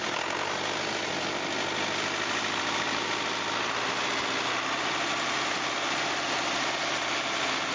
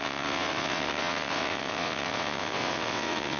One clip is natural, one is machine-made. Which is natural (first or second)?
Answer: first